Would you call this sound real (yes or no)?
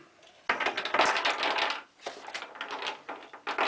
yes